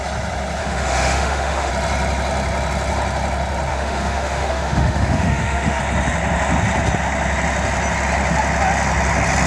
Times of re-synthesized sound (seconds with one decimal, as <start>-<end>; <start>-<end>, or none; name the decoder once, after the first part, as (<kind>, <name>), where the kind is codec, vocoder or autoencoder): 0.6-1.7 (autoencoder, DAC-VAE); 3.7-5.8